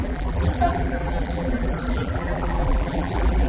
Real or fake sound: fake